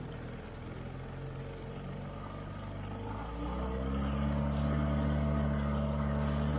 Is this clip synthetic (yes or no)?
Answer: no